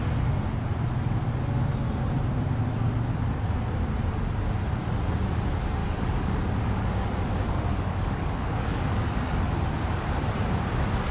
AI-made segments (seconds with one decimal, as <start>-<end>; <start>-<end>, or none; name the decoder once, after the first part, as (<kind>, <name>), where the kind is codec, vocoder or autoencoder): 5.8-7.1 (codec, DAC); 7.7-9.5